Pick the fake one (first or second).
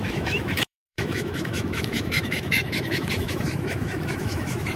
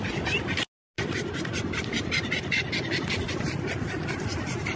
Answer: first